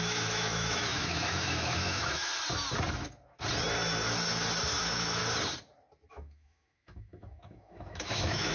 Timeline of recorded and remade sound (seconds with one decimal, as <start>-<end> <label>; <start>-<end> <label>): 0.0-2.3 remade; 2.3-4.8 recorded; 4.8-5.2 remade; 5.2-6.1 recorded; 6.1-8.5 remade